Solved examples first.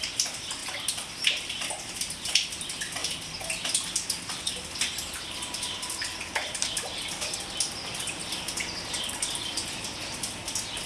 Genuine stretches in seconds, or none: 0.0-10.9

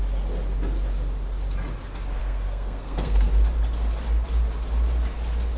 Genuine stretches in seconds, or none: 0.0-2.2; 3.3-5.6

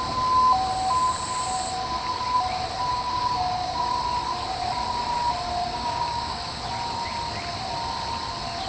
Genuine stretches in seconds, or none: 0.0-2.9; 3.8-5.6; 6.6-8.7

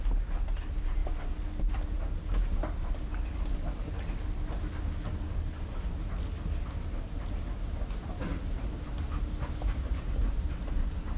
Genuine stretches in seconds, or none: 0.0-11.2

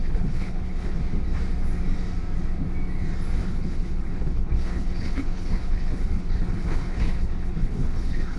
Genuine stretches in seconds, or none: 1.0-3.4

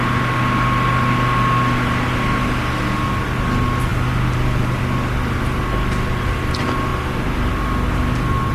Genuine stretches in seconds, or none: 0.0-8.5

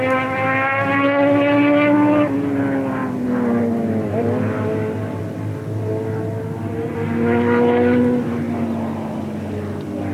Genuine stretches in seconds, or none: 0.0-10.1